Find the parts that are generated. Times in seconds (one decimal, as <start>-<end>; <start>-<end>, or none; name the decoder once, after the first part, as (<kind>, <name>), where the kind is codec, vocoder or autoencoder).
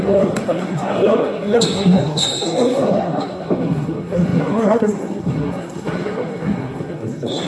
0.0-7.5 (codec, SNAC)